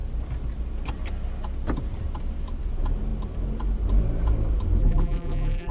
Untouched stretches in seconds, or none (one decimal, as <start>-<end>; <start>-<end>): 0.0-4.8